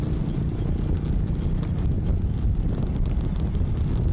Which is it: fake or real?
real